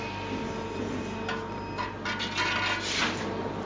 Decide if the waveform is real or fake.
real